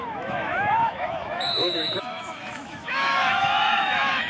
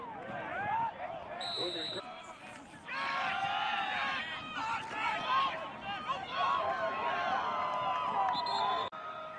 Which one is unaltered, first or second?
second